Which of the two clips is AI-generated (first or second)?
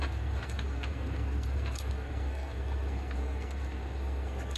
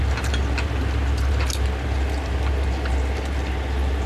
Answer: first